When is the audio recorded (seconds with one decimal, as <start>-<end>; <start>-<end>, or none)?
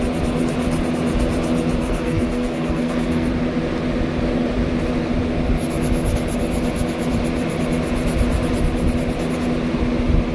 0.0-1.8; 3.3-10.3